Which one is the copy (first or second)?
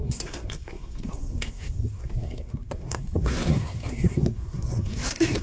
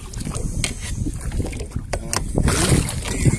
first